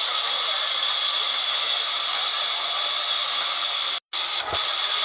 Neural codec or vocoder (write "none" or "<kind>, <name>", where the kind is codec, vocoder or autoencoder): none